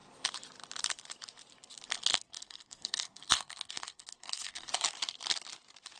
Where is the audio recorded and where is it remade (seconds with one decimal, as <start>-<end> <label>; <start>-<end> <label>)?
0.0-2.1 recorded; 2.1-4.7 remade; 4.7-6.0 recorded